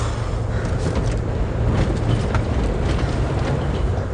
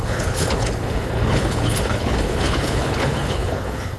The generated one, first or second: second